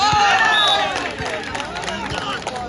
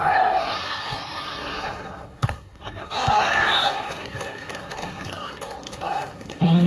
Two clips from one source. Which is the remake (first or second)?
second